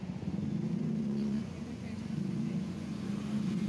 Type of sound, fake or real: fake